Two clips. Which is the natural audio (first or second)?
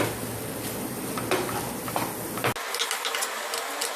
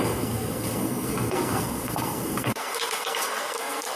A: first